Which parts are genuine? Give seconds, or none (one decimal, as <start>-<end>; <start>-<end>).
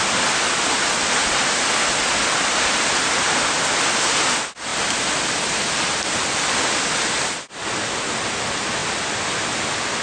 0.0-10.0